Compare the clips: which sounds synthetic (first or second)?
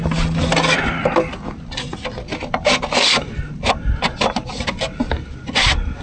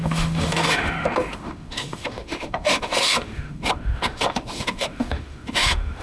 second